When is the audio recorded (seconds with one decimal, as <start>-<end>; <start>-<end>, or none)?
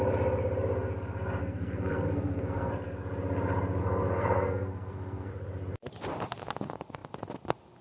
0.0-1.4; 2.7-3.8; 5.3-7.8